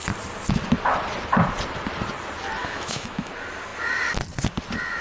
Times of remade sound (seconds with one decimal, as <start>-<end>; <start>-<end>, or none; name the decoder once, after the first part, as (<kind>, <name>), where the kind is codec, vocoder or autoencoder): 2.6-3.3 (autoencoder, DAC-VAE)